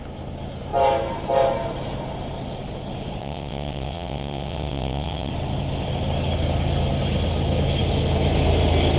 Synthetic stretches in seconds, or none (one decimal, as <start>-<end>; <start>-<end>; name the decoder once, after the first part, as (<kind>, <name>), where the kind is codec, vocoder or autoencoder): 3.2-5.3 (vocoder, WaveNeXt)